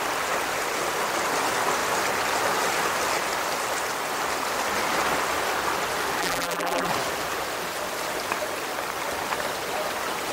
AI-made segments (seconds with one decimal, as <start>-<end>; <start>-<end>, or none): 6.2-6.9